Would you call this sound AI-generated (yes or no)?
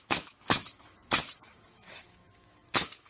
yes